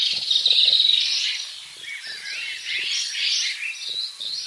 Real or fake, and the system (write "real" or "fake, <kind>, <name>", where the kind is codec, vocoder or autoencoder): real